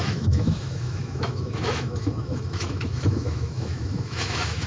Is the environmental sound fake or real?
fake